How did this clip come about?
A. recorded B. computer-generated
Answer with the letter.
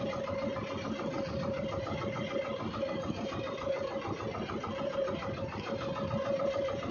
A